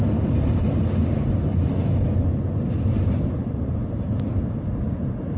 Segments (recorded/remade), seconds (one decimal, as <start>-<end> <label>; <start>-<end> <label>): 0.0-0.7 remade; 0.7-1.5 recorded; 1.5-3.2 remade; 3.2-5.4 recorded